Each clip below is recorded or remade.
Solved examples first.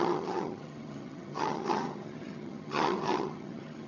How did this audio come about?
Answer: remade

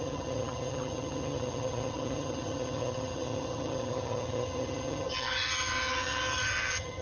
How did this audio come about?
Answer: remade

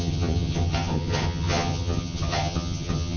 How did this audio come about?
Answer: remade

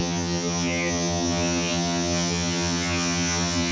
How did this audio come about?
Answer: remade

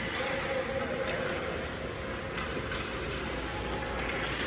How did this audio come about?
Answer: recorded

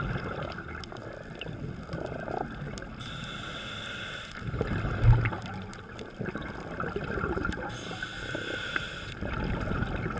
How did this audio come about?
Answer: recorded